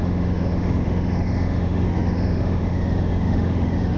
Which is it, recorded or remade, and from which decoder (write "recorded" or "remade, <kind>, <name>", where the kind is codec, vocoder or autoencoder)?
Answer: remade, autoencoder, DAC-VAE